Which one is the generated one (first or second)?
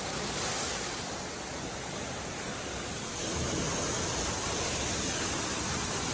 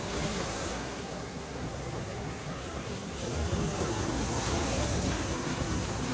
second